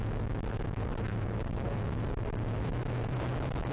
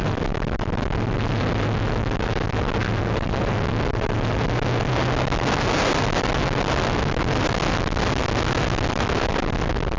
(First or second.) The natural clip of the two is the second